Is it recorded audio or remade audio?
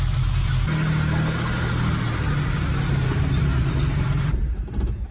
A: recorded